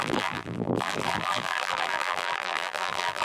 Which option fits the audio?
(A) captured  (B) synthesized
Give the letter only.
B